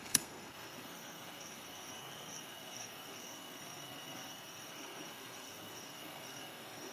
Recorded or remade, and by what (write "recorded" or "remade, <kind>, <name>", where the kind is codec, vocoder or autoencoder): remade, codec, SNAC